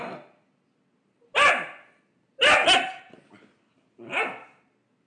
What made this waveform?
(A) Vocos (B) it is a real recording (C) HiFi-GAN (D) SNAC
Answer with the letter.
B